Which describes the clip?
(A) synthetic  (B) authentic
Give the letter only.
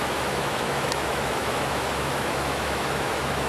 A